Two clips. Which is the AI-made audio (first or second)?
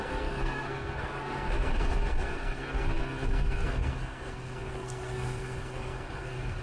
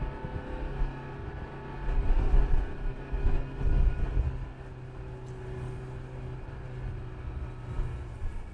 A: first